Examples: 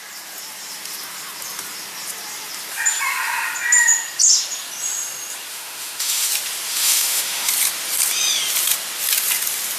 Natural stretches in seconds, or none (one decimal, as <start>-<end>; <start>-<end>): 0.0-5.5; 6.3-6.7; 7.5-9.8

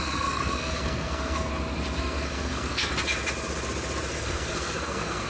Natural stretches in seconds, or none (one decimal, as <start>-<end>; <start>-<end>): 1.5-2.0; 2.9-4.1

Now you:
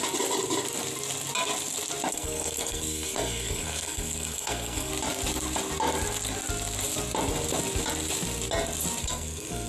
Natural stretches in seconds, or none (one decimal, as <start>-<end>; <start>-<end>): 0.0-2.1; 4.9-9.0

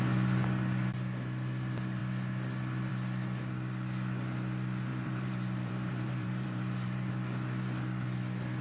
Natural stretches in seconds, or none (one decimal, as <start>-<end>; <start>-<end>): 0.0-4.9; 7.1-8.6

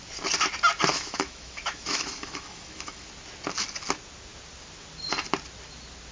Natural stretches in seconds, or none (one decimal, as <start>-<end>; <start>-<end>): 0.0-0.9; 3.0-6.1